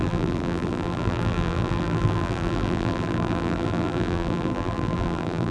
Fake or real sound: fake